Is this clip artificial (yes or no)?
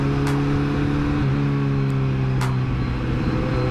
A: no